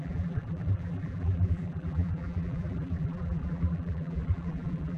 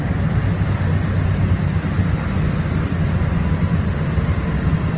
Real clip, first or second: second